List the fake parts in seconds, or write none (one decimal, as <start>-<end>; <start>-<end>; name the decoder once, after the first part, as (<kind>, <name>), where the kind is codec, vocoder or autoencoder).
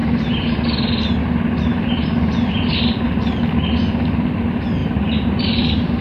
4.8-5.6 (vocoder, BigVGAN v2)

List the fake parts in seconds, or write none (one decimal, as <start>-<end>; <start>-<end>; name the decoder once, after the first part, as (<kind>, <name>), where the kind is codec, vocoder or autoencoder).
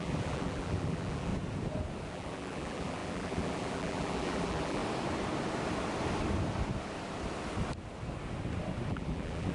0.0-1.3 (vocoder, BigVGAN v2); 2.1-4.8; 8.9-9.5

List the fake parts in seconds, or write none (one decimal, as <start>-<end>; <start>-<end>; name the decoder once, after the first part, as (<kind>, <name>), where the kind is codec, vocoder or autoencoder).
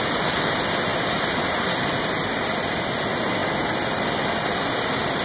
0.9-2.8 (vocoder, BigVGAN v2)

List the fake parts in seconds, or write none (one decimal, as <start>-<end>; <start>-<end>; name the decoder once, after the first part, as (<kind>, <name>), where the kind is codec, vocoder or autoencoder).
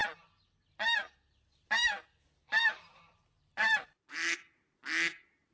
0.0-5.5 (vocoder, BigVGAN v2)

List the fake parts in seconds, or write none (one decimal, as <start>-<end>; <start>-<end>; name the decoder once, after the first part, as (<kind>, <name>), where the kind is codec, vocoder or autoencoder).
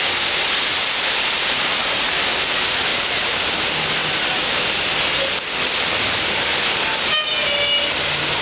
2.9-3.5 (vocoder, BigVGAN v2); 4.0-4.8